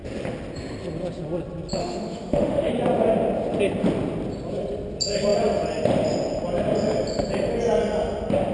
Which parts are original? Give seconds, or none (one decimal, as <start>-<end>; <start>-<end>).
0.0-1.8; 2.7-8.5